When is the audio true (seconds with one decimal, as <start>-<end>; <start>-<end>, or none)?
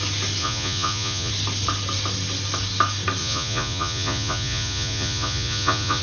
0.0-0.4; 1.3-3.2